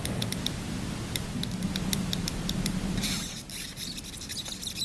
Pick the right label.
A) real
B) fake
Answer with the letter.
A